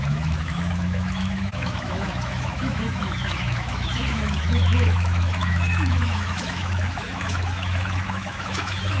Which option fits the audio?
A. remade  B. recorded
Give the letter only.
A